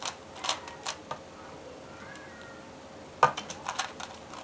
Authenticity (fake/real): real